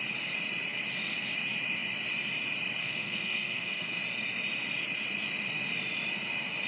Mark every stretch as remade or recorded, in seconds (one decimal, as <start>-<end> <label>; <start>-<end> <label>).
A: 0.0-2.8 recorded; 2.8-4.0 remade; 4.0-6.7 recorded